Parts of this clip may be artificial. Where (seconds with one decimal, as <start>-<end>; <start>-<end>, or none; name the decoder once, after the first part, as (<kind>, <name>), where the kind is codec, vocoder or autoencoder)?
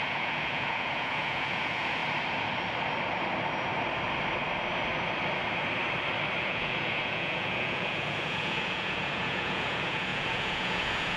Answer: 0.0-2.0 (vocoder, Vocos); 6.4-11.2